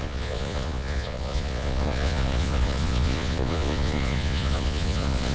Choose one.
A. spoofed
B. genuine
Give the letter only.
A